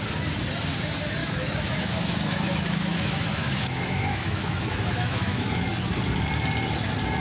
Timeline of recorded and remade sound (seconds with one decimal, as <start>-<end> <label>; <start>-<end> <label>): 0.0-1.2 recorded; 1.2-5.5 remade; 5.5-7.2 recorded